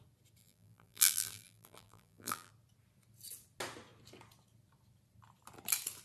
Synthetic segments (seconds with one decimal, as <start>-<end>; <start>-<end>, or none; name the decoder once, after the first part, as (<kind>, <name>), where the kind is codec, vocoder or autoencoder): 0.4-2.5 (vocoder, BigVGAN v2)